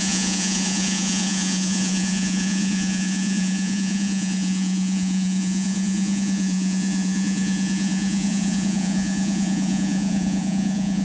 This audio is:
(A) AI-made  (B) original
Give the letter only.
A